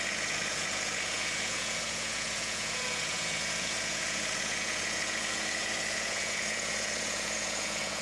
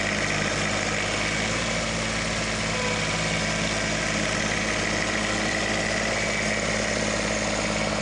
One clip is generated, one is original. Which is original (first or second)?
second